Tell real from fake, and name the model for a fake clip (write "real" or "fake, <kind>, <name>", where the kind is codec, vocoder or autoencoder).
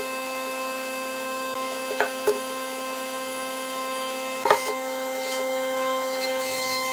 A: fake, autoencoder, DAC-VAE